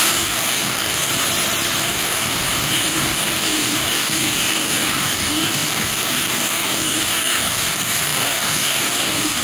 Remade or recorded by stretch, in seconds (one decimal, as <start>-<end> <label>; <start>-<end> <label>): 0.0-1.1 remade; 1.1-1.8 recorded; 1.8-9.4 remade